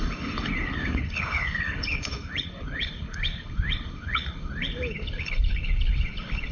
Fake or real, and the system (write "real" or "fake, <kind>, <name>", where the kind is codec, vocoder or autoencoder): fake, codec, HILCodec